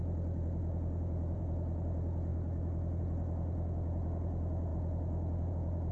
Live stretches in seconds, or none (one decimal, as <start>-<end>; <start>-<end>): 2.3-3.0